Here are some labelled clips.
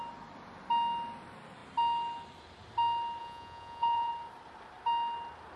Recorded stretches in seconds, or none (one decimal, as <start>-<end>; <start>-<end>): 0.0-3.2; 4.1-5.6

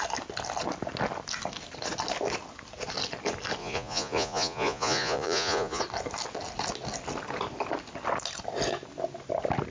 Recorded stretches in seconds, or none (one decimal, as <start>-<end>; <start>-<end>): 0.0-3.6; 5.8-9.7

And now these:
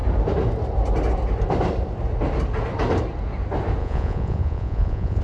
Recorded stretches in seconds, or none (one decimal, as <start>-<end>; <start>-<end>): 0.0-3.8